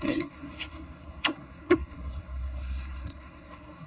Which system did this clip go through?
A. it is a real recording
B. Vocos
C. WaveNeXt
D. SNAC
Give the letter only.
D